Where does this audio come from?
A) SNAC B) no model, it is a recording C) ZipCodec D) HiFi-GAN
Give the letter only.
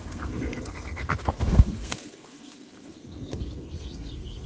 A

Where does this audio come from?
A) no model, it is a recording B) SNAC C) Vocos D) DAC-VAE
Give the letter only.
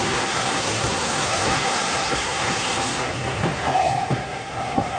B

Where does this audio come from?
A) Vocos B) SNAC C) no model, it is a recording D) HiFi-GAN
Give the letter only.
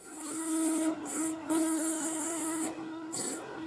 B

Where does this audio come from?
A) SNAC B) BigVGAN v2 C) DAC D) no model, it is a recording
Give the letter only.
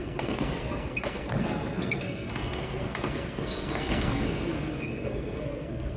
A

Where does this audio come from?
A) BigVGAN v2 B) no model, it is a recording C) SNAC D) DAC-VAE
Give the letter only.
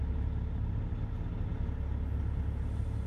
B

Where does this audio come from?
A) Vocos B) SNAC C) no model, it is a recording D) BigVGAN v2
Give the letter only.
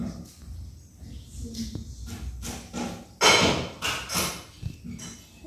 C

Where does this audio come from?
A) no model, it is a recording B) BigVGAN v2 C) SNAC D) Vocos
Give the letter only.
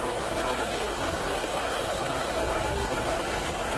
C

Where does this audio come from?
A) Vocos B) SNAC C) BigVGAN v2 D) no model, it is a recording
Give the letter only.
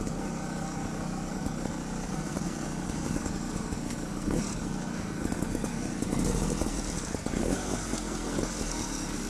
B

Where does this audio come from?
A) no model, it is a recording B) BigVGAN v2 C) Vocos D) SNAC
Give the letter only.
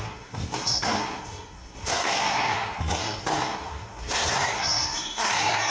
D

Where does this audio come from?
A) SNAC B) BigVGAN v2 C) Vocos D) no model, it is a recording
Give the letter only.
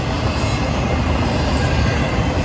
D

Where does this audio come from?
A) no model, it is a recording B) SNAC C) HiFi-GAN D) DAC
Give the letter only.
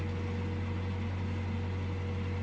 A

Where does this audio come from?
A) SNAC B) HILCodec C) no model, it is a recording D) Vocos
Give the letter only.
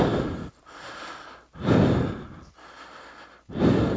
C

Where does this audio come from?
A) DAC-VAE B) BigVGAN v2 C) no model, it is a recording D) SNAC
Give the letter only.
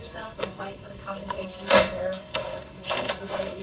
D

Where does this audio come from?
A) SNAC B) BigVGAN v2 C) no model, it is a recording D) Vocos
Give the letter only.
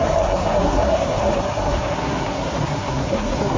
A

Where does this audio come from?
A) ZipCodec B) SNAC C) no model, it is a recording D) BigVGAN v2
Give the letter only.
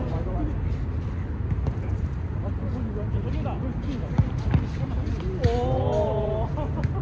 C